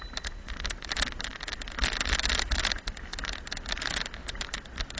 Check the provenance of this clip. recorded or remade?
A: recorded